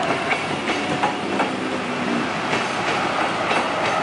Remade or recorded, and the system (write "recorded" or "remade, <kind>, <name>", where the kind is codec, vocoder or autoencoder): recorded